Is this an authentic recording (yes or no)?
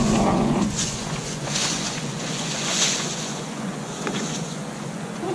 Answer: no